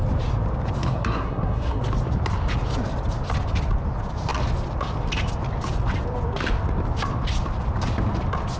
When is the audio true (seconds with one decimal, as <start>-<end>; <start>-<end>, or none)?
0.0-0.8; 1.8-8.6